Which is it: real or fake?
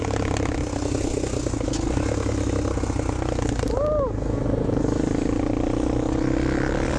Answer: real